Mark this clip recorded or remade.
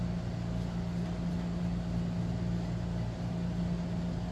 recorded